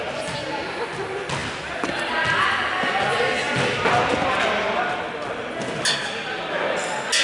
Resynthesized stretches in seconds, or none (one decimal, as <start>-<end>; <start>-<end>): none